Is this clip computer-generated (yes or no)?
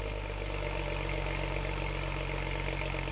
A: no